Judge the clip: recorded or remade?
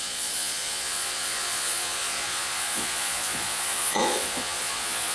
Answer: remade